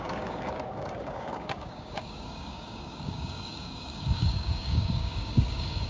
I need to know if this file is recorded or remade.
remade